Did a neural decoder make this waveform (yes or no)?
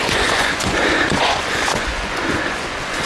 yes